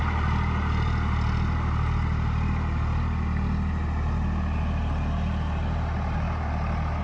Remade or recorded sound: recorded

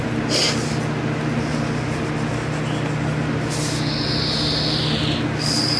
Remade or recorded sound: recorded